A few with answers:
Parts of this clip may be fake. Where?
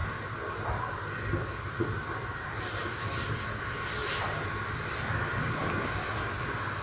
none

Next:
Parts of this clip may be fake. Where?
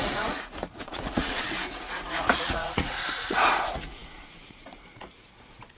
0.0-5.8 (vocoder, Vocos)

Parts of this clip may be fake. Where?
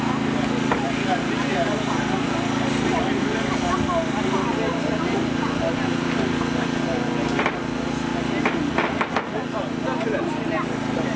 none